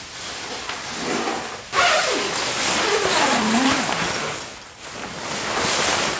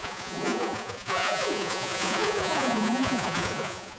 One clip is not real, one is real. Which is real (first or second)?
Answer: first